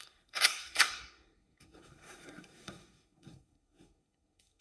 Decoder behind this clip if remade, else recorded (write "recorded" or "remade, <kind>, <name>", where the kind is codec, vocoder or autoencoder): remade, codec, SNAC